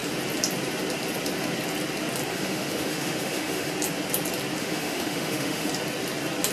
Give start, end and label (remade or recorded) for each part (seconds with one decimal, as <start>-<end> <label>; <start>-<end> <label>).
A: 0.0-2.3 recorded; 2.3-3.7 remade; 3.7-4.6 recorded; 4.6-5.7 remade; 5.7-6.5 recorded